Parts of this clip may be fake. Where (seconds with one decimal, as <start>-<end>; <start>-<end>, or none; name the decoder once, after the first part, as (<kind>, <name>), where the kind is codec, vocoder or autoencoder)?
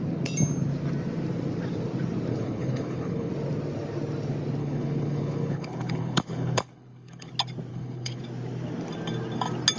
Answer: 2.3-3.3 (codec, HILCodec); 4.6-7.3; 7.7-8.2